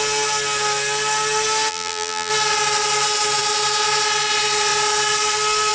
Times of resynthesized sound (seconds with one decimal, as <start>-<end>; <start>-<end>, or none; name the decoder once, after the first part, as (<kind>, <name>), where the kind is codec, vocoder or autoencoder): 1.7-2.3 (vocoder, BigVGAN v2)